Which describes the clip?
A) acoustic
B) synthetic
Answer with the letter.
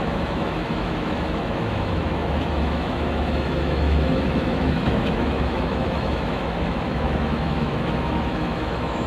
B